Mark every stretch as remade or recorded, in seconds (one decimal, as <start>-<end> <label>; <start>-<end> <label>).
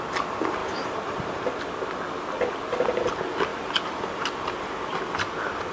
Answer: 0.0-0.6 recorded; 0.6-1.6 remade; 1.6-3.5 recorded; 3.5-4.2 remade; 4.2-5.7 recorded